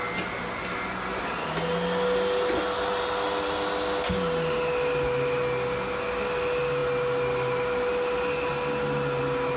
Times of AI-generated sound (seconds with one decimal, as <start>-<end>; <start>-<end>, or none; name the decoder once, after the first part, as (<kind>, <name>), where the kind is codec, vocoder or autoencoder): none